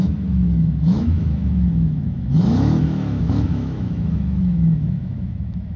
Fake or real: fake